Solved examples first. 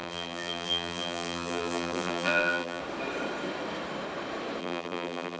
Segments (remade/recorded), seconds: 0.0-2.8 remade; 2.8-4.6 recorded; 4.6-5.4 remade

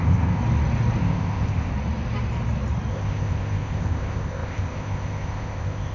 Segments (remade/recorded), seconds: 0.0-0.4 remade; 0.4-1.0 recorded; 1.0-1.7 remade; 1.7-2.9 recorded; 2.9-5.9 remade

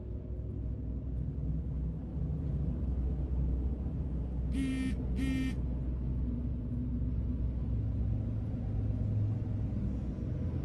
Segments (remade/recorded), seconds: 0.0-10.6 recorded

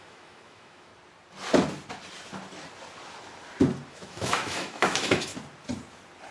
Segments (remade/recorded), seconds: 0.0-0.9 remade; 0.9-3.9 recorded; 3.9-5.3 remade; 5.3-6.3 recorded

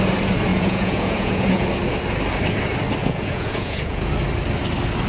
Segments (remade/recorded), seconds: 0.0-0.5 recorded; 0.5-1.7 remade; 1.7-3.0 recorded; 3.0-4.1 remade; 4.1-5.1 recorded

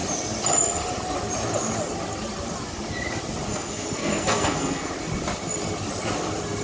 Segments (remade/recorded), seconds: 0.0-3.5 recorded; 3.5-4.9 remade; 4.9-6.6 recorded

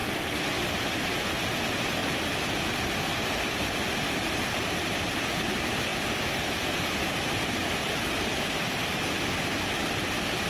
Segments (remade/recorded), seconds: 0.0-2.0 recorded; 2.0-5.1 remade; 5.1-5.9 recorded; 5.9-10.5 remade